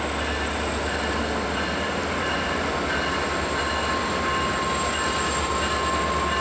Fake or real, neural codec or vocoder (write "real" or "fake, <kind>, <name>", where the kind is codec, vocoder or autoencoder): real